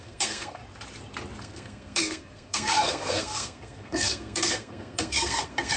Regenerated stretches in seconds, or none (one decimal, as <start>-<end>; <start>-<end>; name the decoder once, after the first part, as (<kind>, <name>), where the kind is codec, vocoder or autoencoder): 0.0-0.6 (codec, SNAC); 1.4-5.8

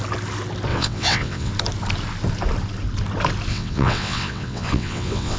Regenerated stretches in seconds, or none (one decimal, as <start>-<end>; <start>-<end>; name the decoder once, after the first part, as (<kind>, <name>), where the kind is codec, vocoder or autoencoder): 0.7-1.5 (vocoder, WaveNeXt); 3.5-5.4

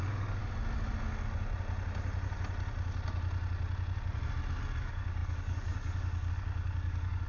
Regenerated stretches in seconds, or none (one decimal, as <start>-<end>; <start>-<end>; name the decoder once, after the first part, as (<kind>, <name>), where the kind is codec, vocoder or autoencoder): 0.0-0.4 (codec, DAC); 4.8-7.3

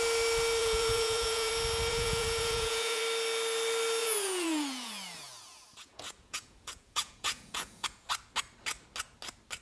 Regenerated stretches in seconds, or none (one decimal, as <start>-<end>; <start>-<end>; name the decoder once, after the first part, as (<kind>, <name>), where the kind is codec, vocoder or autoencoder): 0.6-1.5 (vocoder, Vocos); 1.9-3.0; 4.0-8.1

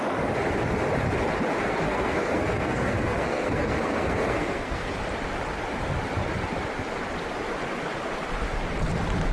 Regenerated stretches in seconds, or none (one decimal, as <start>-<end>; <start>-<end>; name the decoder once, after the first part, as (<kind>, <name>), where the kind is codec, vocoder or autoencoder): 1.6-4.9 (codec, SNAC)

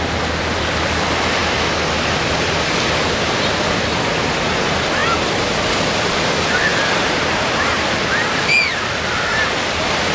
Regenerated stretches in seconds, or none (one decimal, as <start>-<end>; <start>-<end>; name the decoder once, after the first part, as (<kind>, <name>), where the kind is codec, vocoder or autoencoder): none

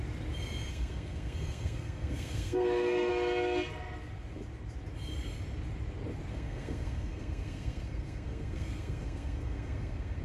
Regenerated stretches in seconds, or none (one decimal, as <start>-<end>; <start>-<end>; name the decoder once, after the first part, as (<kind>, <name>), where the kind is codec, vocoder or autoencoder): 0.7-3.1 (codec, SNAC); 6.3-10.2